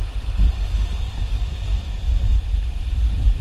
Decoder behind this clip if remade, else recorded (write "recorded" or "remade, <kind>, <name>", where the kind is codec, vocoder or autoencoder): recorded